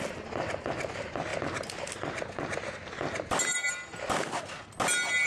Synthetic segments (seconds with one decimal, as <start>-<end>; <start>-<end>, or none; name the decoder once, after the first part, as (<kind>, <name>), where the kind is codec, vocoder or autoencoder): none